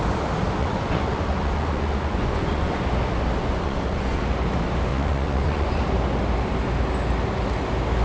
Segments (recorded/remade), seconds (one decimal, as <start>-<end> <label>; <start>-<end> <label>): 0.0-0.6 recorded; 0.6-2.8 remade; 2.8-3.4 recorded; 3.4-4.2 remade; 4.2-4.9 recorded; 4.9-5.8 remade; 5.8-8.0 recorded